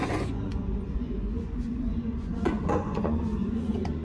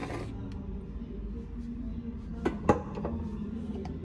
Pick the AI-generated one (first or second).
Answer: first